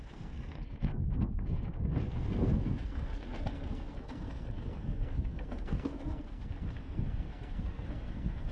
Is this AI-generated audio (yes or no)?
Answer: yes